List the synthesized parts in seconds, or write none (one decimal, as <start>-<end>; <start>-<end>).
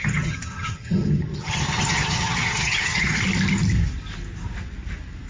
0.0-3.2